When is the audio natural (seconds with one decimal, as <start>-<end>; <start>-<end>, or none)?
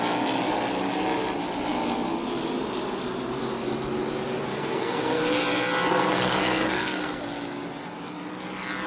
0.0-4.5; 5.2-5.9; 7.2-8.9